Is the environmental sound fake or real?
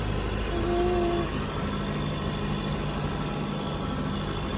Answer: real